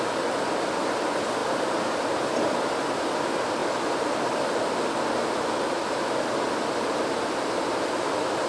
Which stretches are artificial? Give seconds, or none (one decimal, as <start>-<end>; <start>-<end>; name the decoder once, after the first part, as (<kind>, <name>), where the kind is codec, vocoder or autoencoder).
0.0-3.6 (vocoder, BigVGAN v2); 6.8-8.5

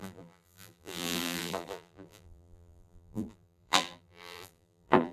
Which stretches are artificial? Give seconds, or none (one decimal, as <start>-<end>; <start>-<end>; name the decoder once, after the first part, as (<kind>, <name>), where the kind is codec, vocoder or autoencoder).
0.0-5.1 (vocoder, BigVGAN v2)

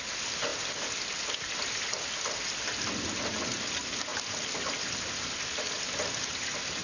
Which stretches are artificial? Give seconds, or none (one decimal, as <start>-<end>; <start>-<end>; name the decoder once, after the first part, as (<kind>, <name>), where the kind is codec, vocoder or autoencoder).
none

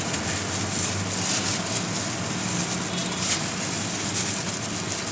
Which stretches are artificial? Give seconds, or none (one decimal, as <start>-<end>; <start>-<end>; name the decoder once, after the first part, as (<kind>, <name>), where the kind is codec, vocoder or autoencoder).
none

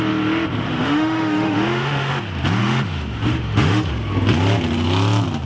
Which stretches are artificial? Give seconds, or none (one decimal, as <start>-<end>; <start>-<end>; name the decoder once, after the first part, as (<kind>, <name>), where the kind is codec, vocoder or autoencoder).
0.7-2.1 (autoencoder, DAC-VAE); 2.6-3.9

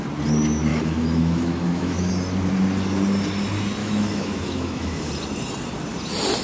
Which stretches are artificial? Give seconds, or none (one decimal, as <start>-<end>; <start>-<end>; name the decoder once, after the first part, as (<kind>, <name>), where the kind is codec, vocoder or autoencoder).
0.7-2.1 (autoencoder, DAC-VAE); 3.8-5.1

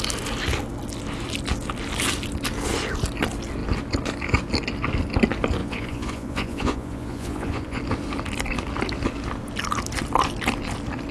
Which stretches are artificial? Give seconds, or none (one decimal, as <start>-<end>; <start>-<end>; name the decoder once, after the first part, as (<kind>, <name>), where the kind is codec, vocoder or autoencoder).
5.6-7.8 (vocoder, Vocos)

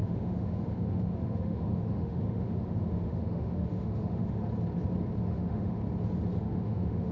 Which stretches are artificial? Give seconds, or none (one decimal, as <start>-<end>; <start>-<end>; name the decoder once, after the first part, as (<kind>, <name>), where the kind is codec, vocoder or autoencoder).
0.0-4.4 (autoencoder, DAC-VAE); 5.2-5.8; 6.4-7.1